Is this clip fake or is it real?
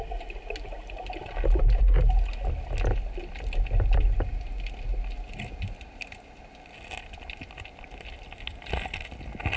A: real